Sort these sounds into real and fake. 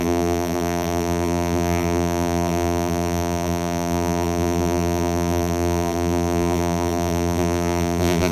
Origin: fake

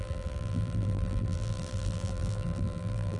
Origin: fake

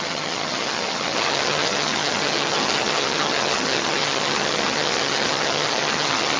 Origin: fake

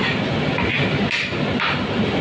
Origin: real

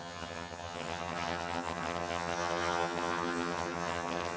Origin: fake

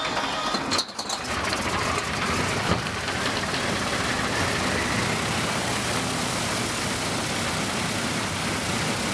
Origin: real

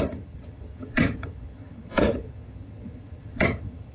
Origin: fake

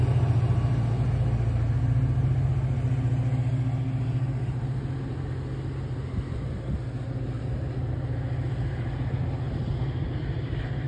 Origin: real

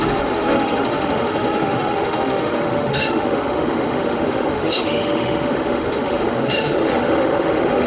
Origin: fake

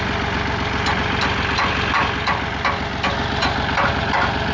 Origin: real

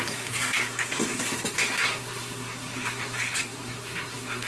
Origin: fake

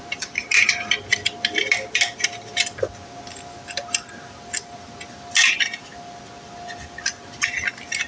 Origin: real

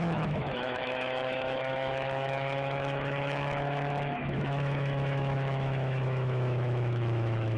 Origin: fake